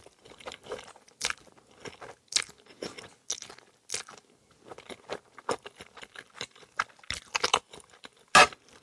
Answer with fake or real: real